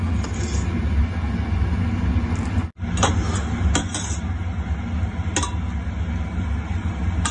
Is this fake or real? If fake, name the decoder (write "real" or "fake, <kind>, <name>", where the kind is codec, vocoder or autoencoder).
real